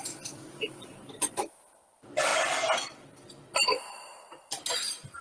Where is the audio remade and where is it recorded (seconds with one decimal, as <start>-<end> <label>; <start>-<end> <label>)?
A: 0.0-5.2 recorded

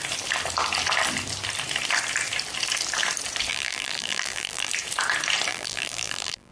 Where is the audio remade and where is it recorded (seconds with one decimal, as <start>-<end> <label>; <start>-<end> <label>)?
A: 0.0-3.5 recorded; 3.5-4.7 remade; 4.7-5.5 recorded; 5.5-6.5 remade

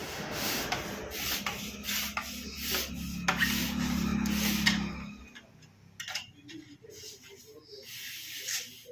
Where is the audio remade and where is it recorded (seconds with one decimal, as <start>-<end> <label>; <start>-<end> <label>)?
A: 0.0-0.6 remade; 0.6-8.9 recorded

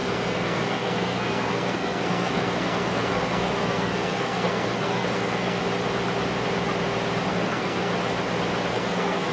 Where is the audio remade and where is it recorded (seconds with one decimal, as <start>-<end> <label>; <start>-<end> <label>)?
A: 0.0-5.6 remade; 5.6-7.3 recorded; 7.3-7.9 remade; 7.9-8.7 recorded; 8.7-9.3 remade

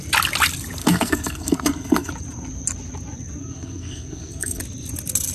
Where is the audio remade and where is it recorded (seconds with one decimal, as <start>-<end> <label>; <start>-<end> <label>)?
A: 0.0-0.8 recorded; 0.8-2.1 remade; 2.1-3.4 recorded; 3.4-4.6 remade; 4.6-5.3 recorded

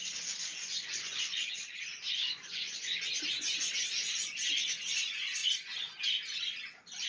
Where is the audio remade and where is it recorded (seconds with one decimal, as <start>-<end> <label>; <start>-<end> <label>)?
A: 0.0-0.4 recorded; 0.4-3.7 remade; 3.7-5.4 recorded; 5.4-6.0 remade; 6.0-7.1 recorded

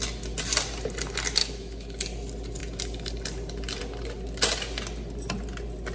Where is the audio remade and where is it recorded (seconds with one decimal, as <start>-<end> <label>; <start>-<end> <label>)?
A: 0.0-1.4 recorded; 1.4-2.0 remade; 2.0-5.9 recorded

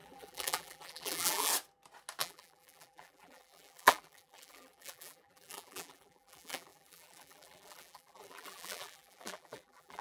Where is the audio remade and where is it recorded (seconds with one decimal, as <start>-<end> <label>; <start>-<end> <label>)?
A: 0.0-1.5 remade; 1.5-2.2 recorded; 2.2-10.0 remade